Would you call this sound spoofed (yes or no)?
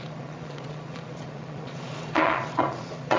yes